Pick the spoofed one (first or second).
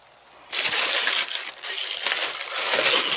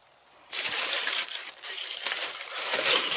second